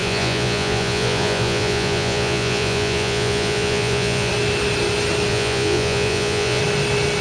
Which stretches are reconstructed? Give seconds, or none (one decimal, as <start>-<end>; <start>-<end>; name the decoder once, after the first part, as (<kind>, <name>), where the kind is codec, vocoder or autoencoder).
0.0-4.3 (vocoder, Vocos); 5.3-6.6